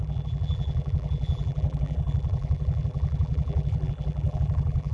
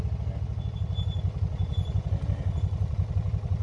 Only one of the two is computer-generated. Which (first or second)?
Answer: first